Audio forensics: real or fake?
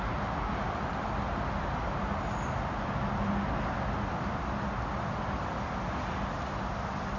real